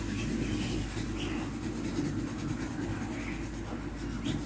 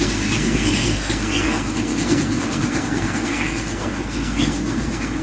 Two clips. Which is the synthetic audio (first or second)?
second